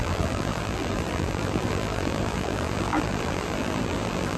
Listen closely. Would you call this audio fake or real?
fake